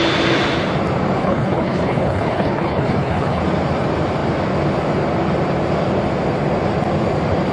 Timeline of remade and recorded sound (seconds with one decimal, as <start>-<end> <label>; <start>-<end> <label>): 0.0-1.2 recorded; 1.2-3.4 remade; 3.4-7.5 recorded